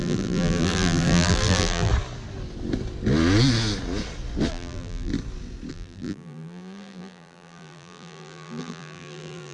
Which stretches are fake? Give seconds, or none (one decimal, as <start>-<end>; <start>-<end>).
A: 0.0-1.9; 4.5-5.1; 5.7-9.5

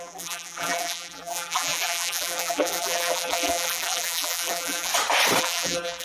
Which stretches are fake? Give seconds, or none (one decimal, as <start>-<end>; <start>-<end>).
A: 0.0-4.9; 5.4-6.0